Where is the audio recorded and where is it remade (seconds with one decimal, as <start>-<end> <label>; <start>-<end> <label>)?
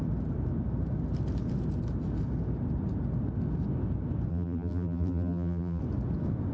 0.0-4.3 recorded; 4.3-5.8 remade; 5.8-6.5 recorded